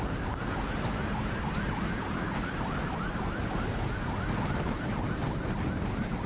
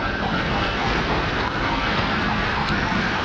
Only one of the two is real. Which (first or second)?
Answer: first